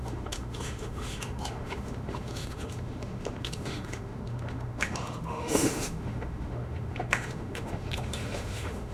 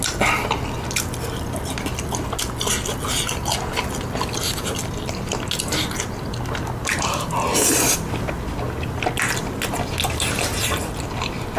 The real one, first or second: second